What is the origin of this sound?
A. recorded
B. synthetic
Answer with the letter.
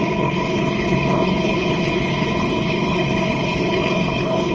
B